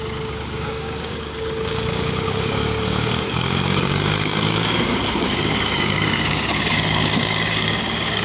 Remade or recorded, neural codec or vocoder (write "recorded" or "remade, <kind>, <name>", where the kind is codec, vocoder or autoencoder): remade, codec, DAC